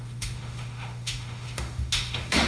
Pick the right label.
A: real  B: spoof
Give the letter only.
B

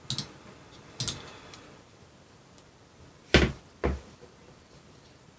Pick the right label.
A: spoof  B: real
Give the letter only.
B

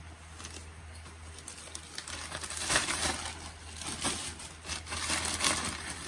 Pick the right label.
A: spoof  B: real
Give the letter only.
B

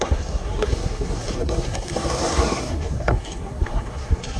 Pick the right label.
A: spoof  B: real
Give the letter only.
A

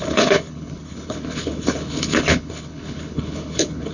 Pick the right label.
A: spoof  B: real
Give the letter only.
A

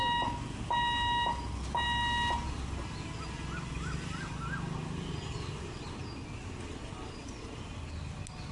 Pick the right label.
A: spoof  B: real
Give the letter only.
B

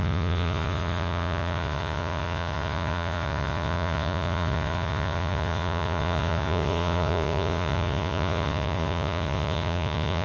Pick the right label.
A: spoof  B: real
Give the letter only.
A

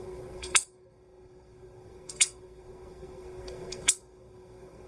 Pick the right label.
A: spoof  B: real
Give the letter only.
A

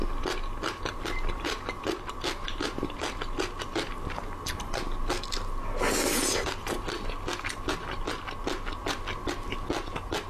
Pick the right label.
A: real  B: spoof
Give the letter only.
A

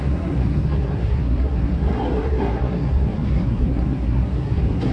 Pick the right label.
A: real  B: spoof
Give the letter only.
B